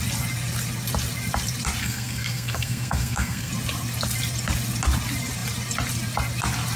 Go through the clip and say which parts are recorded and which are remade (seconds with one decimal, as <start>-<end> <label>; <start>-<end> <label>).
0.0-1.8 recorded; 1.8-3.5 remade; 3.5-6.8 recorded